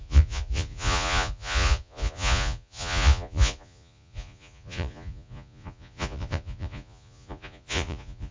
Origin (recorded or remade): remade